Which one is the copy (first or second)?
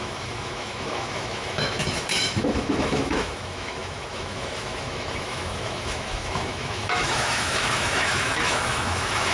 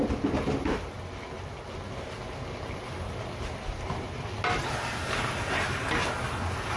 first